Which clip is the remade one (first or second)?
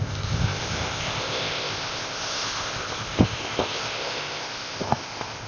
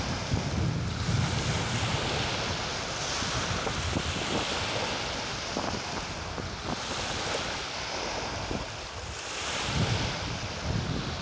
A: first